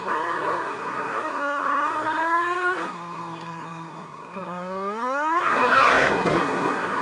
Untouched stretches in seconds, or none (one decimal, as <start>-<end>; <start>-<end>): none

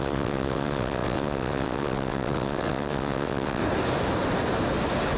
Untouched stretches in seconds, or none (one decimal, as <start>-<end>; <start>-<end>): 3.6-5.2

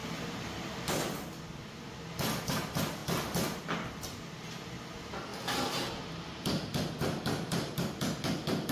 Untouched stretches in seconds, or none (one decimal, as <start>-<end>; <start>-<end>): 0.0-8.7

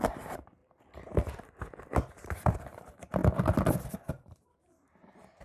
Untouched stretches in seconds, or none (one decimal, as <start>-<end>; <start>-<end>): 0.6-2.1; 3.2-4.1